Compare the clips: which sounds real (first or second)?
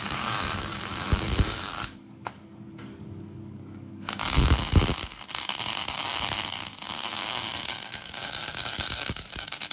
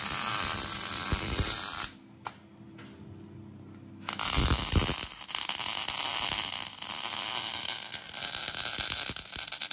second